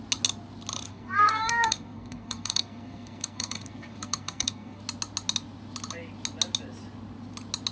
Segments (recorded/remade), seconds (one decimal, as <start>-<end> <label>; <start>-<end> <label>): 0.0-0.9 recorded; 0.9-4.8 remade; 4.8-7.7 recorded